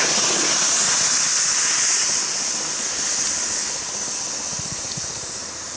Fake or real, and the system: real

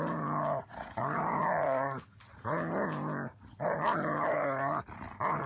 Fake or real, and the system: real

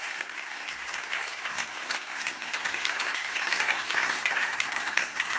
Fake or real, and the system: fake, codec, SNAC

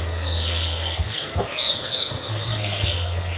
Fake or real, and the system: fake, codec, SNAC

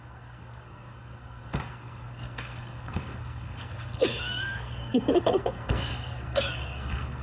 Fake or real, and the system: fake, codec, SNAC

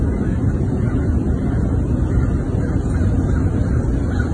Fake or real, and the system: real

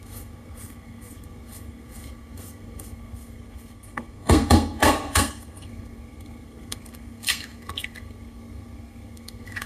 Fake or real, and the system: fake, codec, SNAC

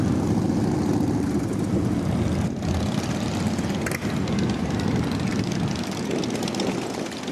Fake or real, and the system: real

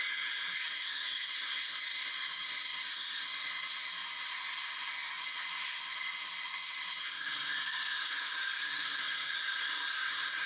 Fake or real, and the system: fake, codec, SNAC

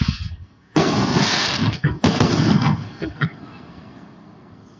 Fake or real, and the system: fake, codec, SNAC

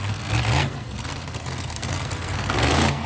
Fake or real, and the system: fake, codec, SNAC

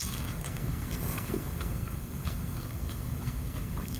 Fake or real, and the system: fake, codec, SNAC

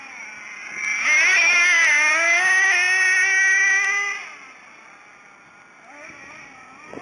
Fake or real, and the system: real